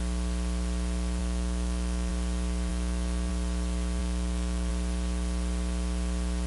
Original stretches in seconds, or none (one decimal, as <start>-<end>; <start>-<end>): 0.0-1.2; 2.1-2.7; 3.3-4.0; 4.7-6.5